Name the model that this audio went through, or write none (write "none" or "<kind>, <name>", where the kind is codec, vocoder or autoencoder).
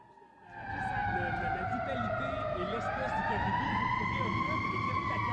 none